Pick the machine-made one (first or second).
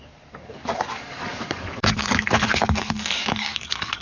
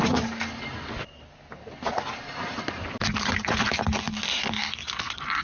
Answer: first